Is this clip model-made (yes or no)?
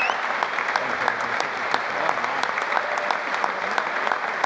no